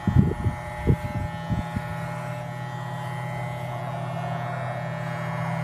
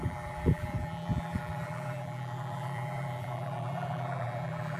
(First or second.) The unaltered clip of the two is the first